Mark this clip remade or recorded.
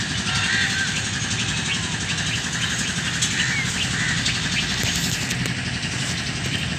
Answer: recorded